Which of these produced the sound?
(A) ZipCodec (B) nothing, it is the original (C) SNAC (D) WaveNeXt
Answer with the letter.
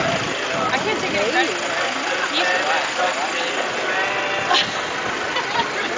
B